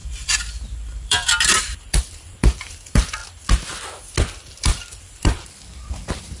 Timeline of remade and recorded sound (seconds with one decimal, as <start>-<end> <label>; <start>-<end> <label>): 0.0-3.2 remade; 3.2-4.4 recorded; 4.4-6.4 remade